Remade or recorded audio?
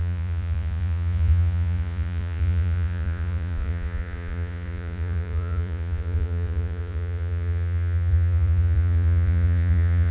remade